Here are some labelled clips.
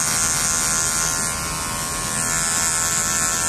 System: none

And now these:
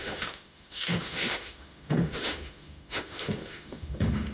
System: autoencoder, DAC-VAE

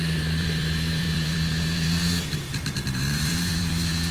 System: vocoder, BigVGAN v2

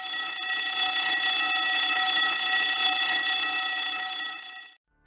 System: none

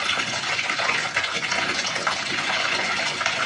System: vocoder, Vocos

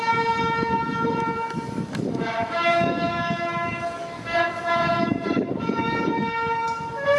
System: codec, DAC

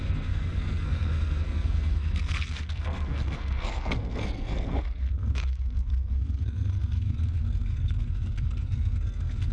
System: codec, SNAC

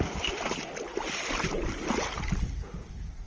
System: none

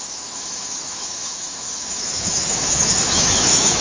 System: autoencoder, DAC-VAE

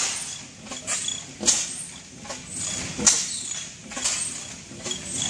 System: none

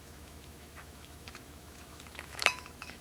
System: autoencoder, DAC-VAE